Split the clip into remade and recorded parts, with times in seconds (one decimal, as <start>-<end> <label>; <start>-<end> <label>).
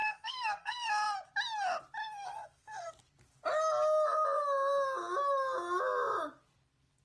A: 0.0-0.9 remade; 0.9-2.0 recorded; 2.0-2.9 remade; 2.9-7.0 recorded